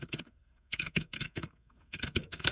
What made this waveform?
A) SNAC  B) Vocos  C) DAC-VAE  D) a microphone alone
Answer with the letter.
A